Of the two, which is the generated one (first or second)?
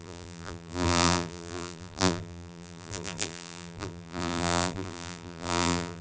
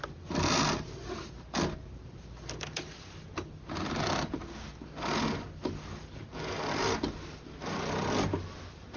first